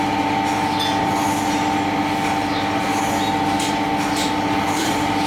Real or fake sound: real